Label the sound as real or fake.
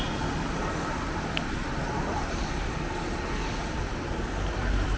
real